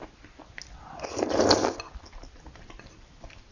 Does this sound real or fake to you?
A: real